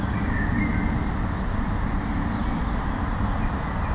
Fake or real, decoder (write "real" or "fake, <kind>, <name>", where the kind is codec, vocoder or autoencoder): real